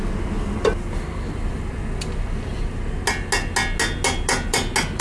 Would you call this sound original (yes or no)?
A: yes